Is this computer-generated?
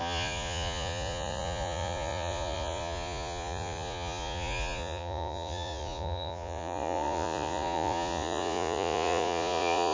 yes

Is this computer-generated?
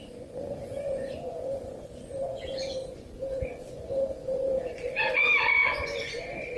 yes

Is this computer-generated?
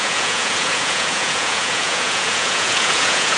yes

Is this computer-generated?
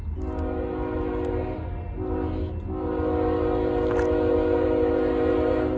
no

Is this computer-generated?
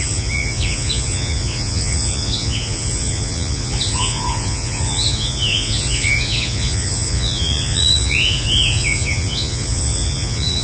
yes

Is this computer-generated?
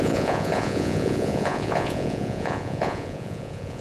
yes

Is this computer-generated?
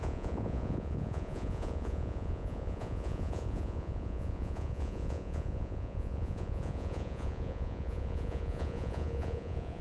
yes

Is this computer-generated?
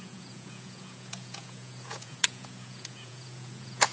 yes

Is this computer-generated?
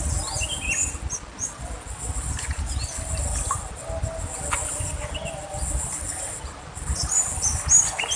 no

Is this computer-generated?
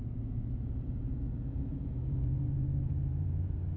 yes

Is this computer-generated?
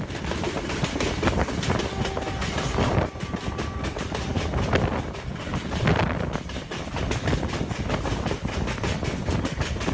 no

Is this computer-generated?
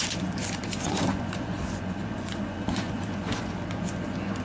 yes